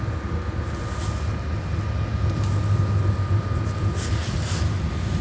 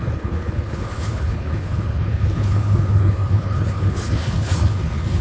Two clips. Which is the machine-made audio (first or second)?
second